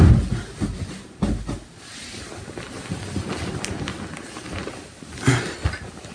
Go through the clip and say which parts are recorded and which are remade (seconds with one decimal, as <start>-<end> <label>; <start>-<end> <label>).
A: 0.0-6.1 recorded